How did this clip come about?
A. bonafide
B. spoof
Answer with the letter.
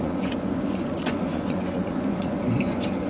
B